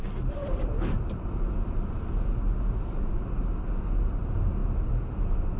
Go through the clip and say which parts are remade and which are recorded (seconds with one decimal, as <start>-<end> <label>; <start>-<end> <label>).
0.0-5.6 recorded